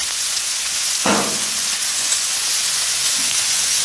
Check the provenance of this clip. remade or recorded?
remade